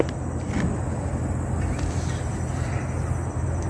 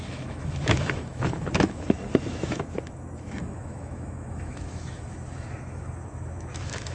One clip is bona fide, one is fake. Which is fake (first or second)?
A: second